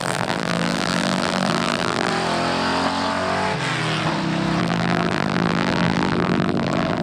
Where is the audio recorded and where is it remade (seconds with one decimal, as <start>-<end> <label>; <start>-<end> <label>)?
0.0-2.1 remade; 2.1-4.6 recorded; 4.6-7.0 remade